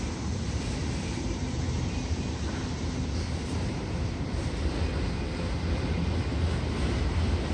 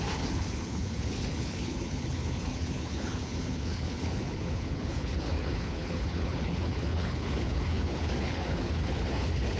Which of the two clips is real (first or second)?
first